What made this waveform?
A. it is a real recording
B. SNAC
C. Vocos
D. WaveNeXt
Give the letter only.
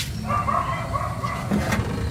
A